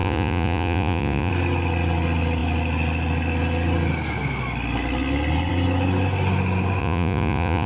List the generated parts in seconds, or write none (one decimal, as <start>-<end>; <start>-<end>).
0.0-1.3; 6.8-7.7